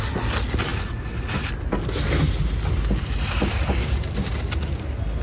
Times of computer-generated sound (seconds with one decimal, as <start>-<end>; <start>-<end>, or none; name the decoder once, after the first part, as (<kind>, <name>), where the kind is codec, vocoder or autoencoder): none